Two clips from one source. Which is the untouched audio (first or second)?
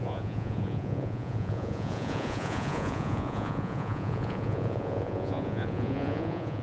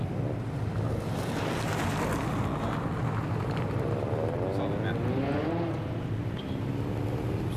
second